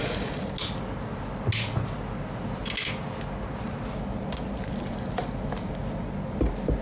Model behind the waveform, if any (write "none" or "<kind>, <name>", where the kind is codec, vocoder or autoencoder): none